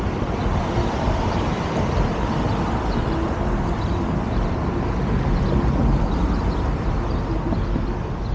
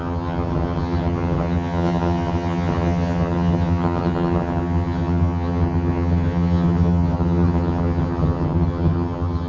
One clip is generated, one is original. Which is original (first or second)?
first